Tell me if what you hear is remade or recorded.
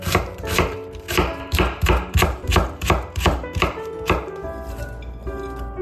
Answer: remade